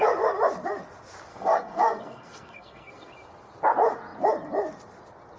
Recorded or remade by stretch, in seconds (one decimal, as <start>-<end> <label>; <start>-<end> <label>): 0.0-1.3 recorded; 1.3-3.1 remade; 3.1-5.4 recorded